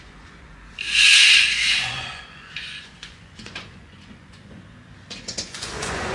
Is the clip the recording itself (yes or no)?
no